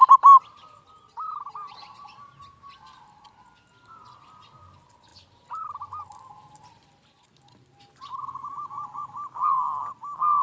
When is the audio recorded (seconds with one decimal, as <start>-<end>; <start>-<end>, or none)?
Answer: 0.0-10.4